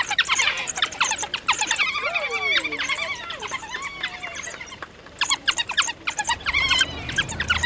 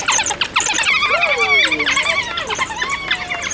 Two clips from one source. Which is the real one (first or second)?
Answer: second